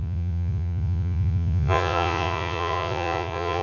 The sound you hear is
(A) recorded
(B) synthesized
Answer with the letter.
B